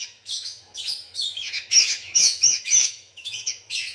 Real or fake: fake